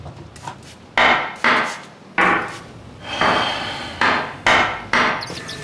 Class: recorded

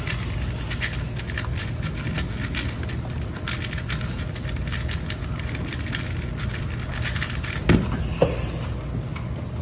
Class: recorded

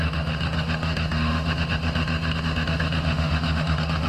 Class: remade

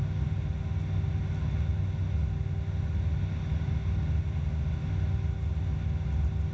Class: recorded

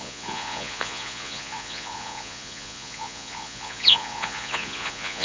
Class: remade